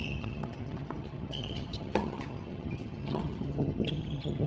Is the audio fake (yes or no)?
yes